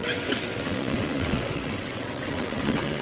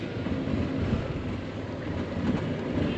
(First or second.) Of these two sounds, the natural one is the second